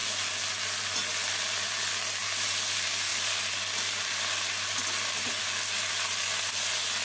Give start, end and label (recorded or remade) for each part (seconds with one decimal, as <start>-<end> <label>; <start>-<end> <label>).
0.0-7.0 recorded